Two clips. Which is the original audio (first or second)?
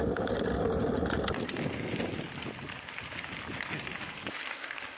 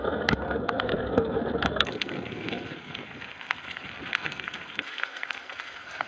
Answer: first